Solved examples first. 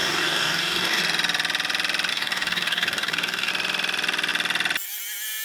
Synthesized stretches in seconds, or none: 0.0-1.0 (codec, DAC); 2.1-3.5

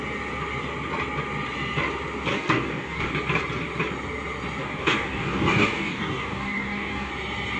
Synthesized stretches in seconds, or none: 2.3-3.1 (codec, DAC); 4.6-7.1